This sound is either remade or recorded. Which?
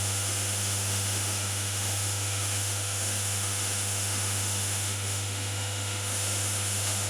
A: remade